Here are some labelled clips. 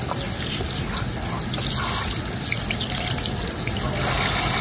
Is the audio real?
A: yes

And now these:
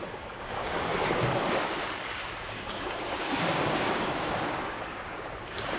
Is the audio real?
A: no